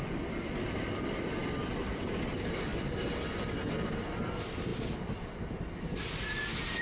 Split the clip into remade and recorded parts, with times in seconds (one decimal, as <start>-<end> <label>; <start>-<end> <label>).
0.0-6.8 recorded